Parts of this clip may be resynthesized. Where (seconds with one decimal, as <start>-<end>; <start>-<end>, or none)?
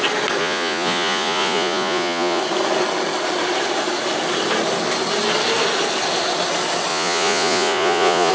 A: 0.4-2.4; 6.9-8.3